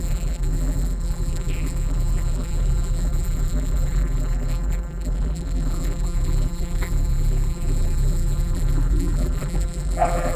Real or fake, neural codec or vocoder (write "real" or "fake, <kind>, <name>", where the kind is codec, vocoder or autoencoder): fake, vocoder, BigVGAN v2